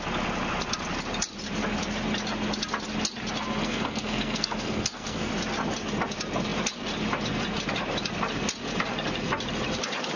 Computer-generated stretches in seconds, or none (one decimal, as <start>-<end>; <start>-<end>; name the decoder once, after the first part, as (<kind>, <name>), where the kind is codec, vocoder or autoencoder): 3.6-5.3 (codec, SNAC)